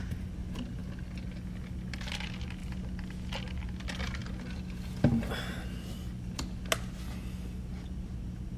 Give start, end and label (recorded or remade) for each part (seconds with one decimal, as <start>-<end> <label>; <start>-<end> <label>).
0.0-8.6 recorded